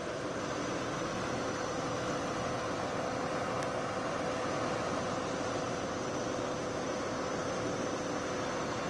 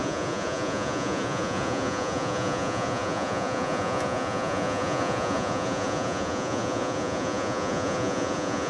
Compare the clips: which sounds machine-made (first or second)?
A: second